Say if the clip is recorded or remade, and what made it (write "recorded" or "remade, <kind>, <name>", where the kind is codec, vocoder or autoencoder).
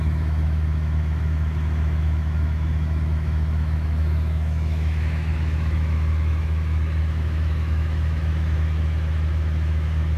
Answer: remade, autoencoder, DAC-VAE